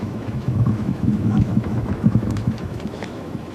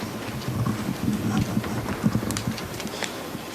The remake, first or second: first